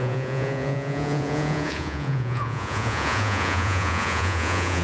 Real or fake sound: fake